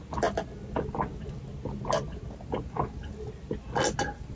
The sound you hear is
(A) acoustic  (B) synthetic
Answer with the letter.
A